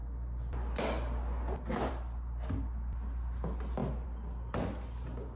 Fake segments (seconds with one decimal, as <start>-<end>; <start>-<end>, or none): none